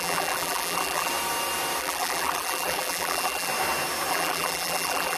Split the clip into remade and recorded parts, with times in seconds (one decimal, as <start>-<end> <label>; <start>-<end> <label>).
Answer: 0.0-1.1 remade; 1.1-1.8 recorded; 1.8-3.5 remade; 3.5-4.1 recorded; 4.1-5.2 remade